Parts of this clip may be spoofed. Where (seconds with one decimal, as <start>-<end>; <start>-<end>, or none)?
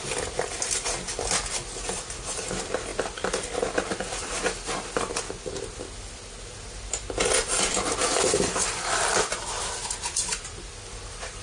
none